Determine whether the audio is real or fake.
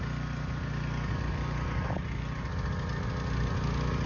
real